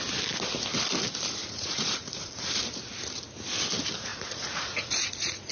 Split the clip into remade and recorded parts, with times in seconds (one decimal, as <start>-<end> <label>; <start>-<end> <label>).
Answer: 0.0-1.4 recorded; 1.4-2.3 remade; 2.3-4.1 recorded; 4.1-5.5 remade